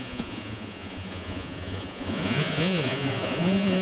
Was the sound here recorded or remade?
remade